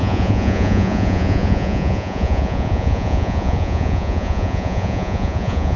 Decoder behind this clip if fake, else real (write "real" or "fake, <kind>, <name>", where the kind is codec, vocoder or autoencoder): fake, vocoder, Vocos